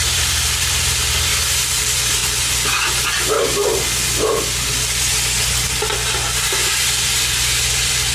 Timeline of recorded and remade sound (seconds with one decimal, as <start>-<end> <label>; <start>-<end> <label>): 0.0-1.3 remade; 1.3-1.8 recorded; 1.8-2.2 remade; 2.2-6.7 recorded; 6.7-8.1 remade